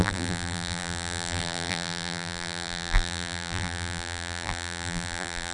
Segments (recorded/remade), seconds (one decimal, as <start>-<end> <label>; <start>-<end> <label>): 0.0-5.5 remade